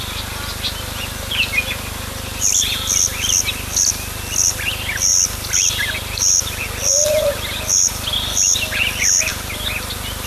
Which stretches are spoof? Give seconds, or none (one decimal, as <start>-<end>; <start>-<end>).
none

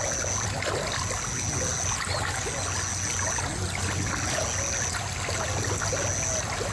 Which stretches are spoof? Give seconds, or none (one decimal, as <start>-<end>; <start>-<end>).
none

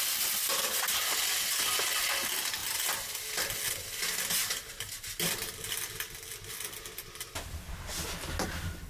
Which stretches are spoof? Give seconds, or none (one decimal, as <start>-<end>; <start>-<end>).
none

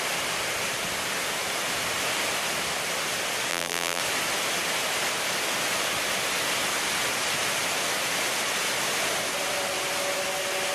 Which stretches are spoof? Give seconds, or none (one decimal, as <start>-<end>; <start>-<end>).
3.5-4.0

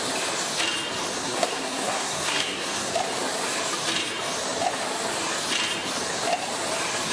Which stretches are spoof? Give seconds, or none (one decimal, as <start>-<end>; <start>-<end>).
1.2-2.9